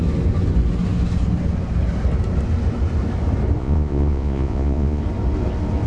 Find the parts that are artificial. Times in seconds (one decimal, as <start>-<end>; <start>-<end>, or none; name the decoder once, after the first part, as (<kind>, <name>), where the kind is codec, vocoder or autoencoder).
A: 3.6-5.0 (vocoder, Vocos)